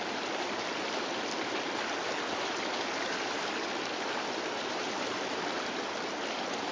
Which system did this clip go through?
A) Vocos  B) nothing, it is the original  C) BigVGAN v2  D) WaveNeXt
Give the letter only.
B